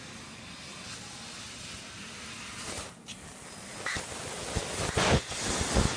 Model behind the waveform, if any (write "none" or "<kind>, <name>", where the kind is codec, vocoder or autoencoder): none